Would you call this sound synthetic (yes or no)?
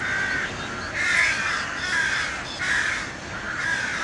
no